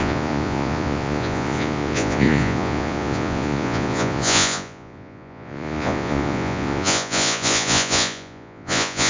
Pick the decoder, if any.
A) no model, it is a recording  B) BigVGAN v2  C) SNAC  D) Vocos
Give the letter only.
D